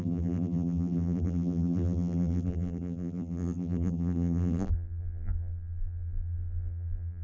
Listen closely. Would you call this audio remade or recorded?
remade